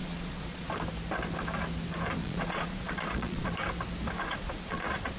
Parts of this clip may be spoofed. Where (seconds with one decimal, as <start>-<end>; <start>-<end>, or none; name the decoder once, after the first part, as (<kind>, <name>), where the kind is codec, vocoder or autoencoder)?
0.0-0.7 (vocoder, Vocos); 2.2-3.5; 4.2-5.2